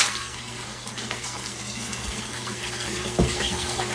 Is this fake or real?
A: fake